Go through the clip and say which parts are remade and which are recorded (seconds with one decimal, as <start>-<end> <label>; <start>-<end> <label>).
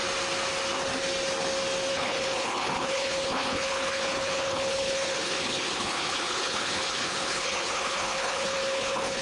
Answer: 0.0-1.9 recorded; 1.9-9.2 remade